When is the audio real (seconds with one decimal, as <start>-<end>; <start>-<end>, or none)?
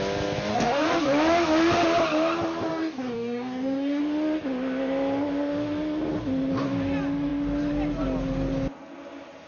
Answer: 0.0-0.5; 1.0-2.7; 4.0-9.5